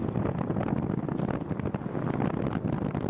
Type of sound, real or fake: real